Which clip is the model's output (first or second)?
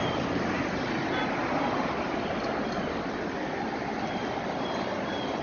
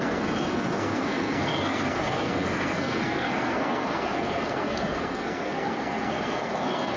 second